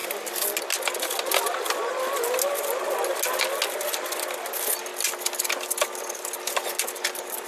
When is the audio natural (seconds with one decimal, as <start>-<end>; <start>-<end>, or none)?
0.0-7.5

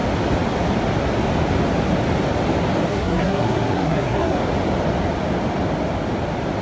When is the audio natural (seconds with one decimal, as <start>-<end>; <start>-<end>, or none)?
0.0-2.9; 4.4-6.6

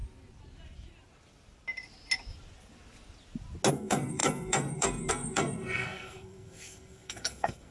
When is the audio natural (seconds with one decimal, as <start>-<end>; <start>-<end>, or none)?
0.0-3.7

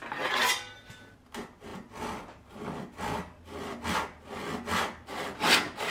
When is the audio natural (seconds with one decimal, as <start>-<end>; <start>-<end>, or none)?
0.0-5.9

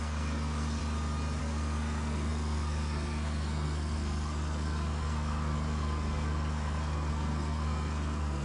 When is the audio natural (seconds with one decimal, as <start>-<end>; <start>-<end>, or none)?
0.8-1.4